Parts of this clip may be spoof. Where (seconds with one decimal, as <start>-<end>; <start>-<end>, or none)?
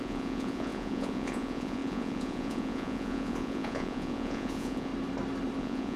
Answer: 0.0-4.9; 5.6-6.0